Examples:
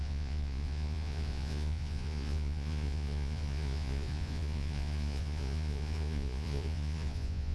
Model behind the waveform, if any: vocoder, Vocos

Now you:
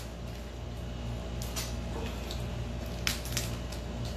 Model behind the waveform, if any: none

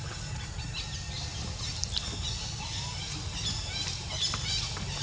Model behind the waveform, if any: none